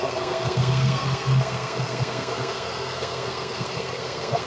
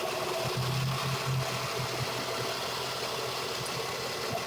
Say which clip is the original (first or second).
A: second